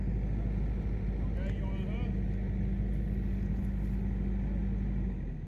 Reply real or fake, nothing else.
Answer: real